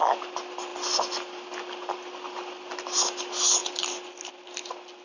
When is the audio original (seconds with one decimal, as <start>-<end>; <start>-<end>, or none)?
0.0-5.0